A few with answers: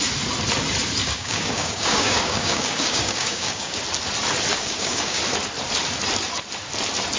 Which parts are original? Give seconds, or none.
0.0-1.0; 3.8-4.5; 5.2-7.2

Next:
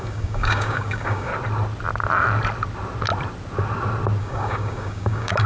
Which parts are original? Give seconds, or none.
1.3-4.2

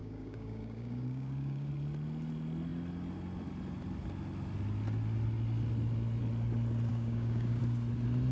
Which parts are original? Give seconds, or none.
1.7-6.9; 7.6-8.3

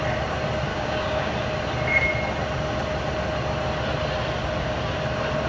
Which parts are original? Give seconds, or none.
0.0-0.7; 1.3-5.5